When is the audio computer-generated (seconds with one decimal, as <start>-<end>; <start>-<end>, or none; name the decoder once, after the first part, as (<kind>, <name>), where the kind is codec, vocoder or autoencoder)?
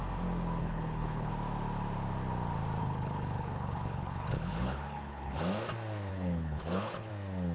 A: 0.6-1.3 (codec, HILCodec); 2.8-5.4; 6.1-7.1